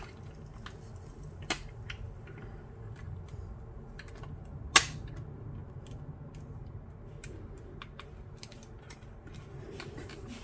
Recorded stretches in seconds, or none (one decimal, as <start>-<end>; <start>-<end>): 0.0-10.4